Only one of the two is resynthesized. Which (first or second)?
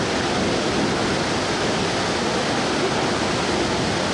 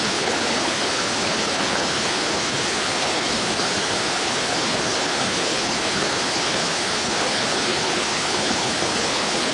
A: second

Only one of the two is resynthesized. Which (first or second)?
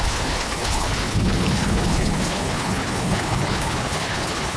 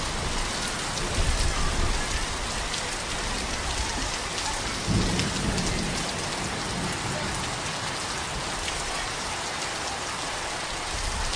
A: first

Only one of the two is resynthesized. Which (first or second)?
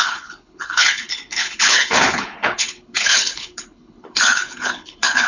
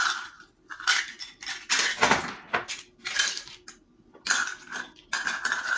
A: first